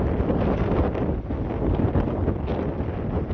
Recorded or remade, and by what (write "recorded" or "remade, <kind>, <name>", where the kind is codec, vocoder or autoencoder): recorded